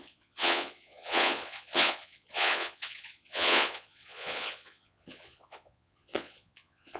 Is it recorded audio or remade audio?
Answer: remade